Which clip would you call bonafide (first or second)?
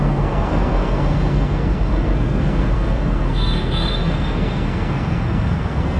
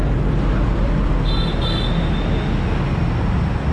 second